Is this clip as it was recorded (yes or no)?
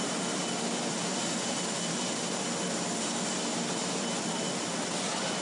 no